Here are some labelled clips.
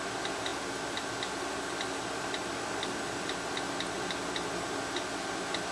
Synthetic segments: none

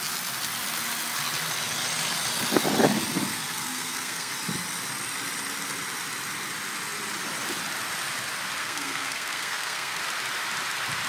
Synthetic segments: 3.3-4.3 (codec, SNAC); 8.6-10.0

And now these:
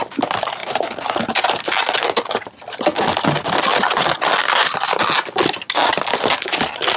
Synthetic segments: none

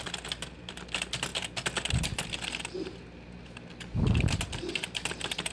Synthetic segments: none

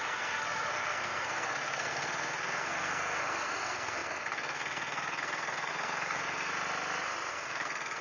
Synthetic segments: 0.0-6.5 (codec, SNAC); 7.3-8.0